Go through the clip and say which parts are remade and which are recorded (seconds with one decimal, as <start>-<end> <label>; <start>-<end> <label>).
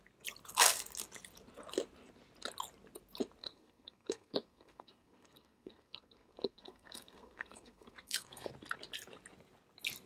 0.0-3.4 recorded; 3.4-8.5 remade; 8.5-10.1 recorded